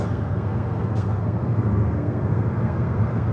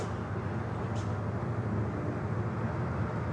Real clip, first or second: second